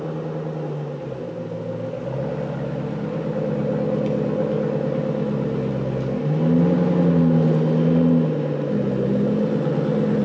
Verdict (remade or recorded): recorded